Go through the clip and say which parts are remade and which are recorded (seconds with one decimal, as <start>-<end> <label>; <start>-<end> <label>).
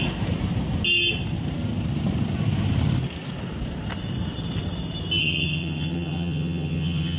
0.0-5.2 recorded; 5.2-7.2 remade